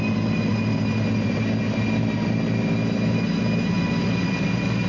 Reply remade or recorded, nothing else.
recorded